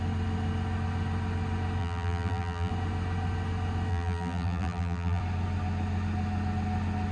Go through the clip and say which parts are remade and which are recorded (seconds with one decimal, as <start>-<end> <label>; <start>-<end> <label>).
0.0-1.8 recorded; 1.8-2.7 remade; 2.7-3.9 recorded; 3.9-5.2 remade; 5.2-7.1 recorded